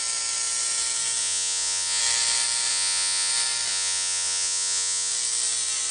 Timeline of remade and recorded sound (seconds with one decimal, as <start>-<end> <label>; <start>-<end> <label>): 0.0-1.2 recorded; 1.2-2.0 remade; 2.0-2.7 recorded; 2.7-3.3 remade; 3.3-3.7 recorded; 3.7-5.1 remade; 5.1-5.9 recorded